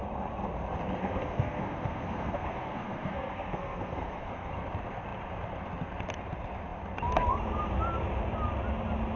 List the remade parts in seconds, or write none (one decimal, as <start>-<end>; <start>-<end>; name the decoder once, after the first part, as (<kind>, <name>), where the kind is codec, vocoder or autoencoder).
1.0-4.5 (codec, SNAC)